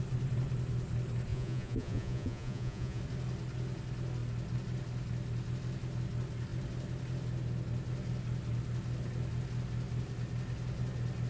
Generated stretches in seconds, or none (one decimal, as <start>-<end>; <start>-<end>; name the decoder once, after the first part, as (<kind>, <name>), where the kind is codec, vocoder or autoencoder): 1.3-3.0 (vocoder, Vocos)